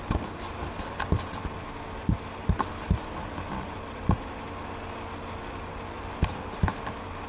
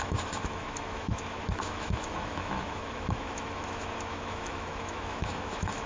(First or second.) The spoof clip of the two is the second